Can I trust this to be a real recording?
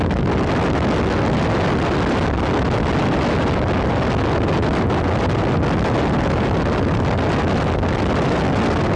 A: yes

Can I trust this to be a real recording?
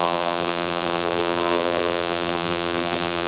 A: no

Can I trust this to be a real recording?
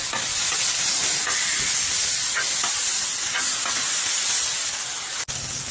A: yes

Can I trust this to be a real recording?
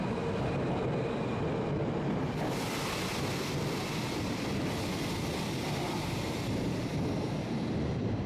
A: yes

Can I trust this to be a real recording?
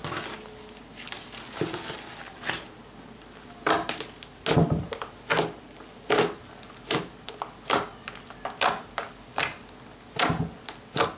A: yes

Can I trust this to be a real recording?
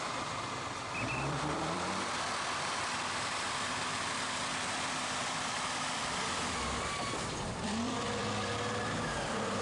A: no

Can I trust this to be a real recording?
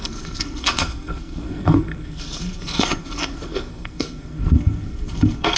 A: no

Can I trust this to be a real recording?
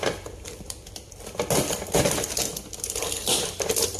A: no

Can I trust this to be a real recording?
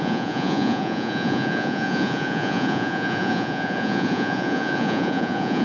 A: no